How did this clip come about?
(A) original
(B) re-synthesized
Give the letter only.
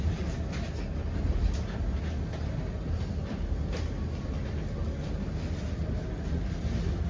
A